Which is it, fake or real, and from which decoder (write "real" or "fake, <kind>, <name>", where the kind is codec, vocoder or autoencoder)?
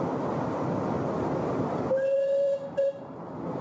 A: real